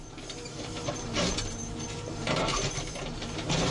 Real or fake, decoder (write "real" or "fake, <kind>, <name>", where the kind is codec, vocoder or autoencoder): fake, vocoder, BigVGAN v2